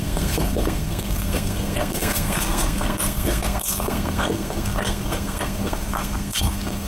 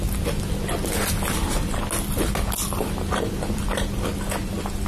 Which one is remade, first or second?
first